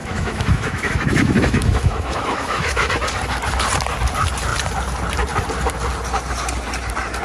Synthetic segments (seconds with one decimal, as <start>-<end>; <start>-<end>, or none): 0.0-2.9